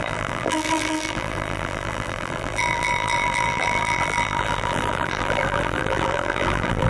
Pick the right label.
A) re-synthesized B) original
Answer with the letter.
A